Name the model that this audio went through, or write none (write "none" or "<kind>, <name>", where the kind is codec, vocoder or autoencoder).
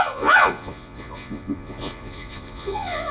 vocoder, Vocos